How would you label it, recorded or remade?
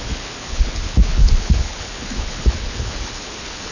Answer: remade